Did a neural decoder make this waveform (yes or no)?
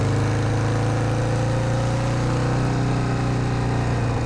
no